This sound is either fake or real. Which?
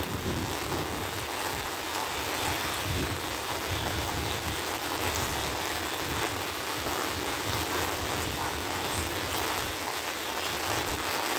real